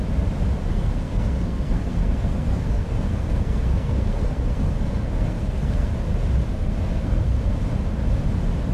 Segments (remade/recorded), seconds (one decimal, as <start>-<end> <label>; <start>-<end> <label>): 0.0-0.7 recorded; 0.7-5.9 remade; 5.9-6.5 recorded; 6.5-7.6 remade; 7.6-8.7 recorded